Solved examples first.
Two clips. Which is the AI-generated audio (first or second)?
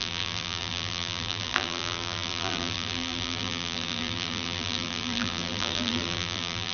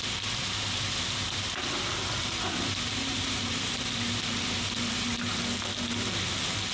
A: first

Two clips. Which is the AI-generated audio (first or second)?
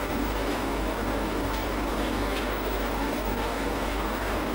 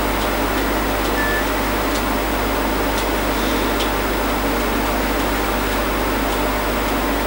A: first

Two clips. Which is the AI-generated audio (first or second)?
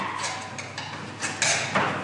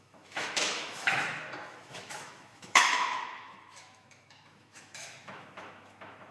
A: second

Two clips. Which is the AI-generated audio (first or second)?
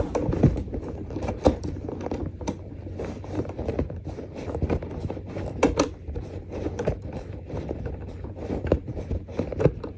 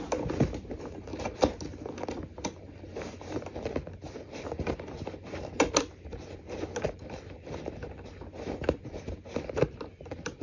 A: first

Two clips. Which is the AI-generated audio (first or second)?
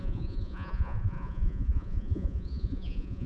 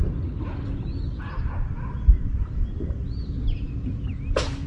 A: first